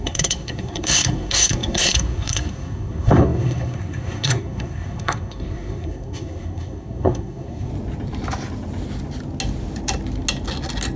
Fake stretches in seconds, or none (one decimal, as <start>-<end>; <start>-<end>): 0.0-7.7